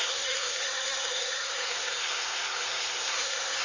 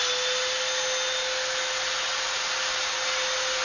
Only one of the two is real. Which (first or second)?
second